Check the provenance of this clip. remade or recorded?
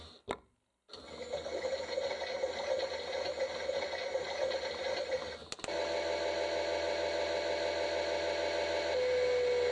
recorded